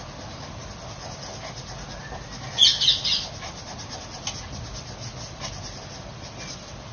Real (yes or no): yes